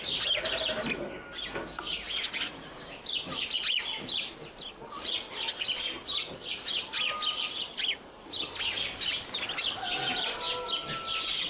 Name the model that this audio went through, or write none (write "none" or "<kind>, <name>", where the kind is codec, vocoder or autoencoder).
none